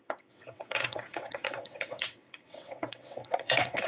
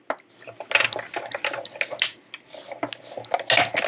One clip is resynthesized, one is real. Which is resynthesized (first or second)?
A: first